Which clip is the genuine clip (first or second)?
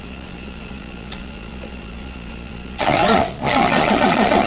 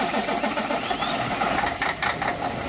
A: second